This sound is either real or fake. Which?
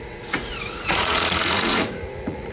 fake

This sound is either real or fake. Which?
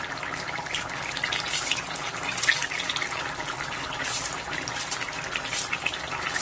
real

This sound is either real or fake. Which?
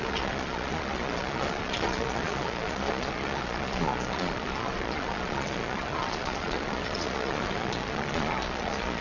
fake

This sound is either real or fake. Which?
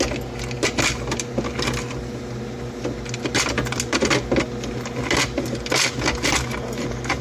real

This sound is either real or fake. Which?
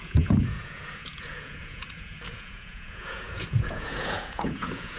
fake